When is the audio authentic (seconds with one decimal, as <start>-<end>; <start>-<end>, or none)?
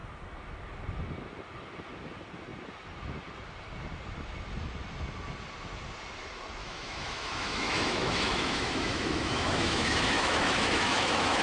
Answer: 0.0-6.6